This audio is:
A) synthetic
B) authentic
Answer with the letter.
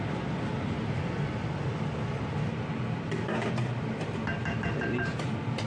B